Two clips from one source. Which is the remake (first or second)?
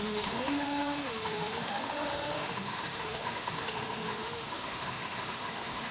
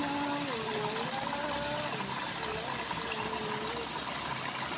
first